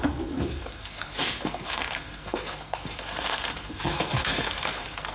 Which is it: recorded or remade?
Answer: remade